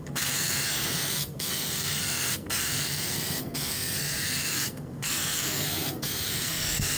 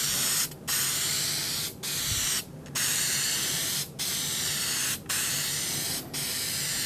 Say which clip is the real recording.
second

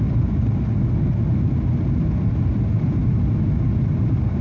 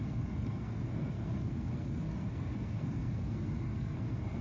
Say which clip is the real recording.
first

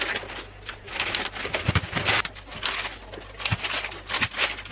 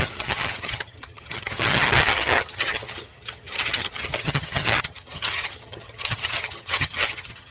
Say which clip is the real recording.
first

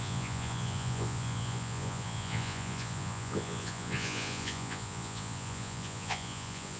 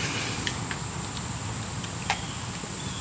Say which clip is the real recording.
second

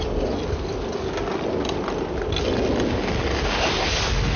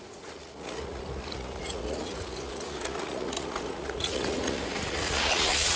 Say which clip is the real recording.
first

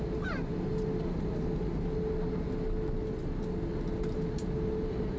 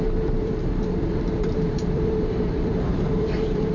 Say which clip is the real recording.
first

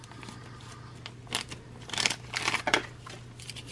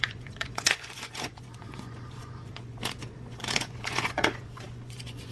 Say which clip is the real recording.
first